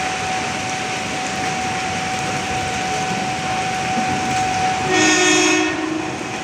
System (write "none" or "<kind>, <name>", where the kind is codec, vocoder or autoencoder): none